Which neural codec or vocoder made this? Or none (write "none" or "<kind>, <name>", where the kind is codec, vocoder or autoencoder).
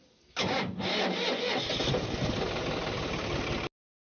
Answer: none